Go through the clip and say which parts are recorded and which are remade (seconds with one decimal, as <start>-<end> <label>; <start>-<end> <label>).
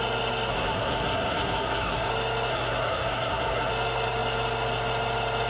0.0-0.5 recorded; 0.5-2.1 remade; 2.1-2.5 recorded; 2.5-3.7 remade; 3.7-5.5 recorded